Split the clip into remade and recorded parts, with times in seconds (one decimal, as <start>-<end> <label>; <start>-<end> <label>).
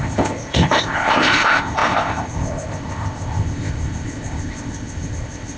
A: 0.0-5.6 remade